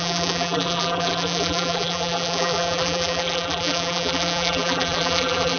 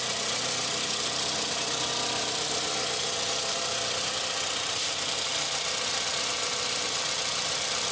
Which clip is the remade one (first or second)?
first